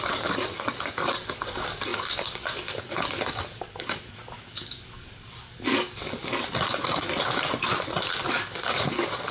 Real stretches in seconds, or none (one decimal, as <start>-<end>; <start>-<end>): 6.3-8.3